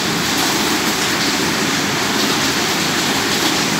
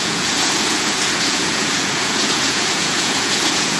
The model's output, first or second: second